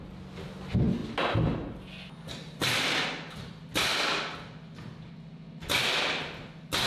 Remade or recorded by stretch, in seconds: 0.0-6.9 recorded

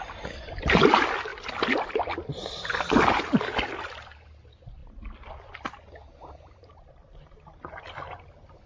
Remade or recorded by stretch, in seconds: 0.0-1.3 recorded; 1.3-2.9 remade; 2.9-8.7 recorded

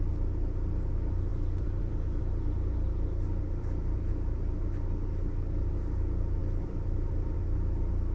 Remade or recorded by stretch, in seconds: 0.0-1.3 recorded; 1.3-2.2 remade; 2.2-6.4 recorded; 6.4-7.4 remade; 7.4-8.1 recorded